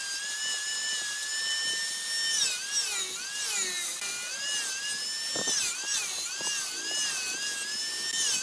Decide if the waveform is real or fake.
real